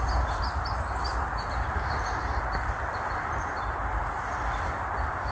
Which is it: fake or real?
real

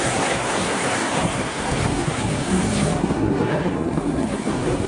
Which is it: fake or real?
fake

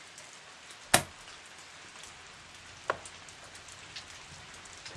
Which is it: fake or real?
real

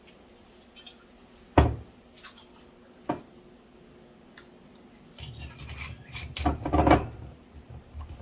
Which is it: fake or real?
real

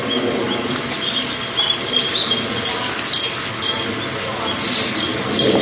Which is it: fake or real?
real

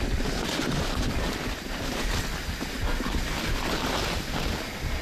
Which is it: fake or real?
real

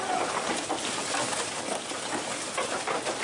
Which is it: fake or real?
real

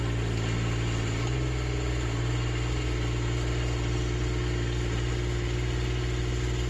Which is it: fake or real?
real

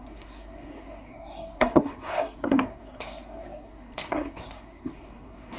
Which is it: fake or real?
fake